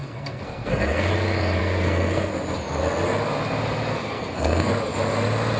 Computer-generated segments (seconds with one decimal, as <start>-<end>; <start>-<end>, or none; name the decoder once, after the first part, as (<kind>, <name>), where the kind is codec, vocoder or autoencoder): 0.0-1.1 (codec, SNAC); 1.6-2.3; 3.9-4.7